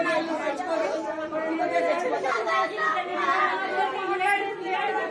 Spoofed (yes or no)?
no